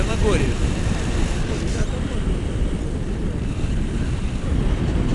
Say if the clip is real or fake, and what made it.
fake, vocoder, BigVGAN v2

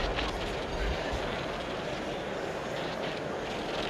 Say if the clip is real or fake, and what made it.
real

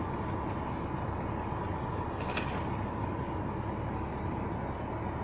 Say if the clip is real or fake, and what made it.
real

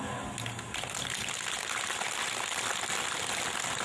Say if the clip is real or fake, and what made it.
real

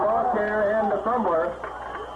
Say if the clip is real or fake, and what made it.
real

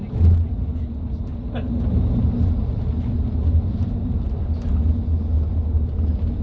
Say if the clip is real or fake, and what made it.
real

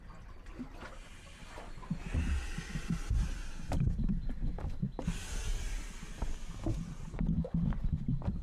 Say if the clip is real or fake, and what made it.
real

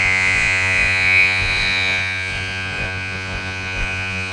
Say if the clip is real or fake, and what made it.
fake, vocoder, Vocos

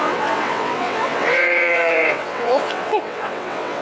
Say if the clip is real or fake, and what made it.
fake, vocoder, WaveNeXt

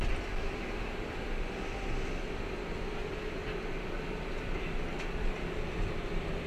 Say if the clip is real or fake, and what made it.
real